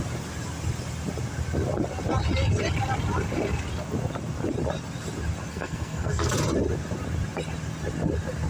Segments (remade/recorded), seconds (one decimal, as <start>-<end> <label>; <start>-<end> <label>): 0.0-5.5 recorded; 5.5-6.3 remade; 6.3-8.5 recorded